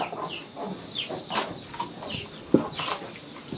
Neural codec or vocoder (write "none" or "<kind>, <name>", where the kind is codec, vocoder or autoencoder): none